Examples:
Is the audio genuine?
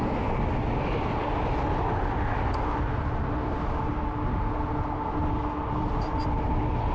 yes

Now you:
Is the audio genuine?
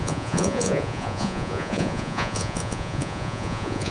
no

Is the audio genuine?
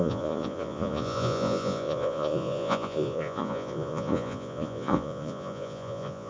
no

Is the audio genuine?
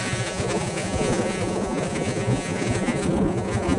no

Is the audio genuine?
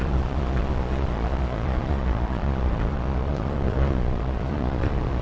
no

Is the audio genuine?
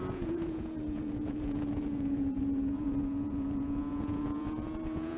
no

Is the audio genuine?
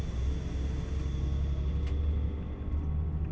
yes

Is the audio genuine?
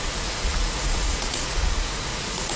no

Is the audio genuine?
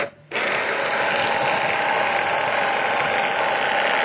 yes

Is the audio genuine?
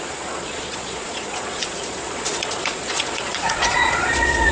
no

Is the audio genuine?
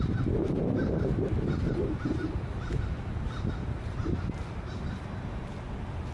yes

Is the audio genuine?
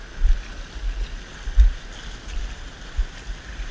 yes